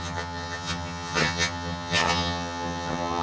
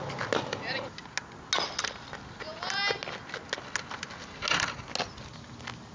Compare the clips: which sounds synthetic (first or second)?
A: first